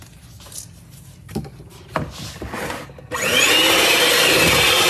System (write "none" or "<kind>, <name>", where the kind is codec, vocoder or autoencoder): none